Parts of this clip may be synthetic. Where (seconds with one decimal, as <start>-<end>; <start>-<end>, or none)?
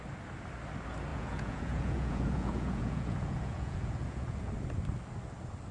1.1-4.5